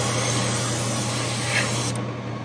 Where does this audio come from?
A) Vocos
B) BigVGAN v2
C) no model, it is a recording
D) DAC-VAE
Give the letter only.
C